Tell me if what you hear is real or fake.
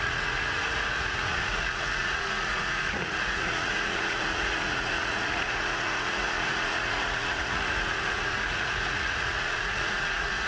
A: fake